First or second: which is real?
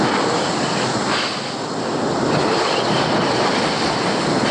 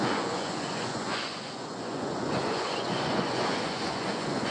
first